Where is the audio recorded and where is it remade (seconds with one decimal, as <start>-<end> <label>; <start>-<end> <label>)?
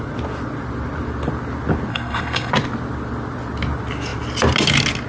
0.0-1.9 recorded; 1.9-2.5 remade; 2.5-5.1 recorded